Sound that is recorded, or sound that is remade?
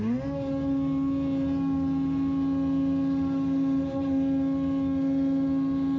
recorded